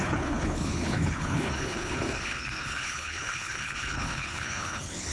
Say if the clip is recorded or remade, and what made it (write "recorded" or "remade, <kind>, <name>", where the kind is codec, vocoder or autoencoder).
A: remade, codec, HILCodec